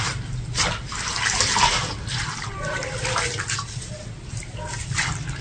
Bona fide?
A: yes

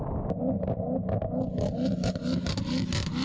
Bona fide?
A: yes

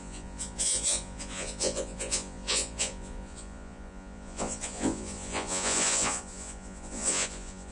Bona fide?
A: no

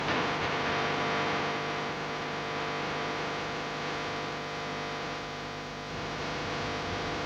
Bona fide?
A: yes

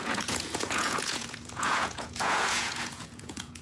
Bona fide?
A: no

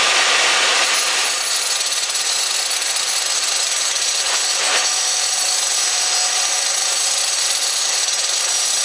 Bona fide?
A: yes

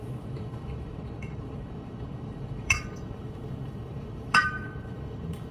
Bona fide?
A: no